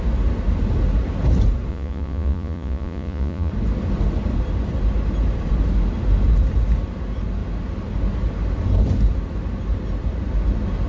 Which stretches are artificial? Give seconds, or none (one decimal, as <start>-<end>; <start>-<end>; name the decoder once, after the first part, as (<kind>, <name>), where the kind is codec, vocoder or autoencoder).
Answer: 1.7-3.5 (vocoder, Vocos)